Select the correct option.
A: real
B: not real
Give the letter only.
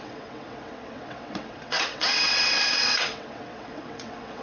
B